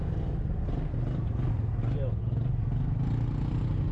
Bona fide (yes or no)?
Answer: yes